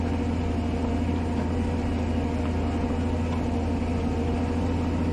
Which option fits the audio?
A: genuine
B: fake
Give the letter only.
A